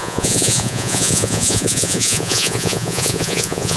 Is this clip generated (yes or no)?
yes